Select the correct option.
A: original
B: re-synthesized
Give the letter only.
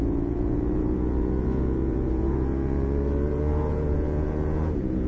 B